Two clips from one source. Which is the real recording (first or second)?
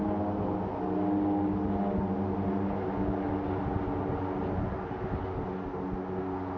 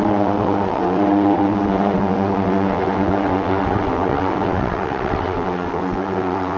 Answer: first